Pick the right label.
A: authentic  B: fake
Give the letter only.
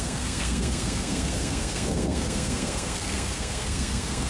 B